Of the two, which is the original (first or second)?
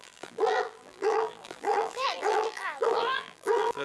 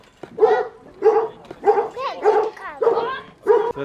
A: second